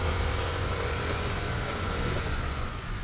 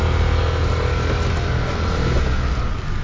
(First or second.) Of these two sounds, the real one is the second